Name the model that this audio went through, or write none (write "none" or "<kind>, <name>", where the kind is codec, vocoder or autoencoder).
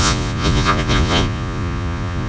vocoder, Vocos